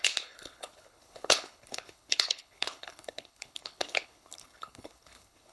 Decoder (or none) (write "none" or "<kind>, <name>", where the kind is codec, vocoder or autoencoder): codec, HILCodec